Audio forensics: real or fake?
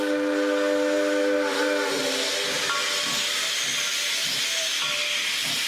real